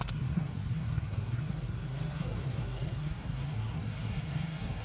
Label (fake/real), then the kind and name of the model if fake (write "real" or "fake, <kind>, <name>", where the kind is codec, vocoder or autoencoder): fake, codec, SNAC